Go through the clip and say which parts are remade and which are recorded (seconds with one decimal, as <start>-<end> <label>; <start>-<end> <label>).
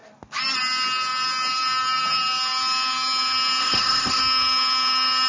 0.0-3.6 recorded; 3.6-4.2 remade; 4.2-5.3 recorded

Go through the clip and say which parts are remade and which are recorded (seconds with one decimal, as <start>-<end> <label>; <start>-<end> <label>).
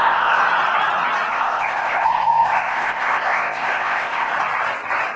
0.0-0.4 remade; 0.4-1.3 recorded; 1.3-4.3 remade; 4.3-5.2 recorded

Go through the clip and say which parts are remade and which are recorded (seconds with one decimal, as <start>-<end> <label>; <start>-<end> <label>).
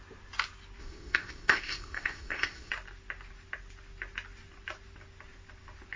0.0-0.8 recorded; 0.8-2.7 remade; 2.7-6.0 recorded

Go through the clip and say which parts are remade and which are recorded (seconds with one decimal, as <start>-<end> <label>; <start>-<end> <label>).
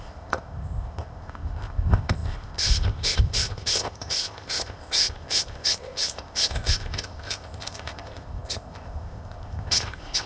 0.0-10.3 remade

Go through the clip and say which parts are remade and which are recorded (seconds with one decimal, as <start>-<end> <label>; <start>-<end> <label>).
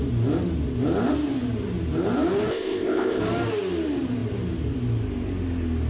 0.0-2.5 recorded; 2.5-3.2 remade; 3.2-5.9 recorded